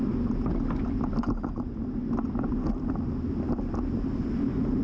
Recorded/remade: recorded